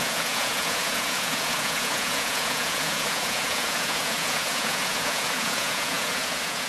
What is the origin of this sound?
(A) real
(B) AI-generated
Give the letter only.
B